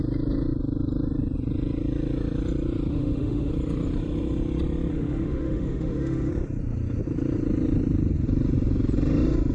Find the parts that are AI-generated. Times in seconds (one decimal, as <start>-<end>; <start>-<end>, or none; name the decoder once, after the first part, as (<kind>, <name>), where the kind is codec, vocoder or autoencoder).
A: 2.9-3.5 (autoencoder, DAC-VAE); 4.9-6.3